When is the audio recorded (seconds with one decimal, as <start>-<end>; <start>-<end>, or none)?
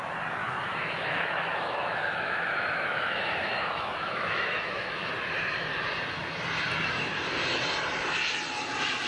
0.0-0.4; 5.1-9.1